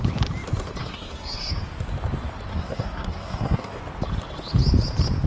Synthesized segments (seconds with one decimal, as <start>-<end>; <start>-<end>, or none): 0.8-1.5; 2.5-3.8